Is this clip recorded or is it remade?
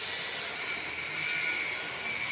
recorded